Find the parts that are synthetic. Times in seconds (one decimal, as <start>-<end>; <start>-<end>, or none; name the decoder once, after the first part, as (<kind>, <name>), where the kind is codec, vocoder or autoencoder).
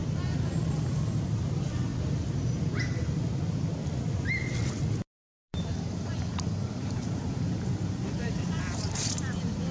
5.4-9.7 (vocoder, BigVGAN v2)